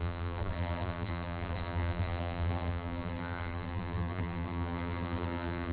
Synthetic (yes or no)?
yes